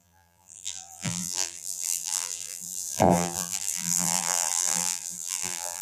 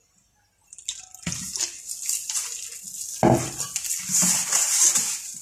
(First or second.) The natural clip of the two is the second